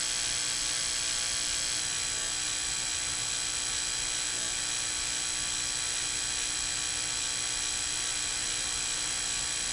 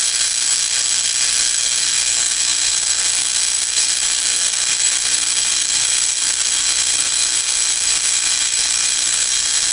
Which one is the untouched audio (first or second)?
first